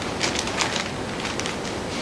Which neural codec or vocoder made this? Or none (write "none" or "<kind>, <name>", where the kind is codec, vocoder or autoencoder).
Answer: none